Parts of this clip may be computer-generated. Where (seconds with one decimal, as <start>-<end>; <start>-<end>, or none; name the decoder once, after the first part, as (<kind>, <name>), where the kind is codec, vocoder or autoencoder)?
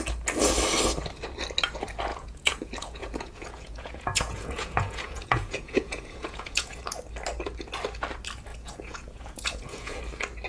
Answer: 2.1-6.8 (vocoder, Vocos); 8.5-10.0